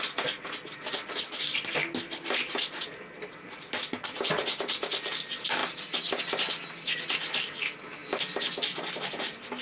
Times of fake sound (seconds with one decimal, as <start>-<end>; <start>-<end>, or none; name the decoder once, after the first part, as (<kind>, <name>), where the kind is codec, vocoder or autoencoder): none